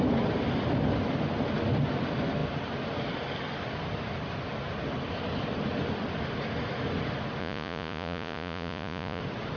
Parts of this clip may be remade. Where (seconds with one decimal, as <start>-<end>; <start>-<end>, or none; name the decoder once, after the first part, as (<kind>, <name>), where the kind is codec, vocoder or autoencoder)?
7.4-9.2 (vocoder, Vocos)